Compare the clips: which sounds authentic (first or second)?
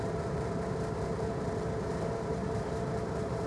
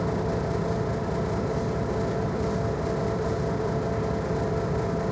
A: second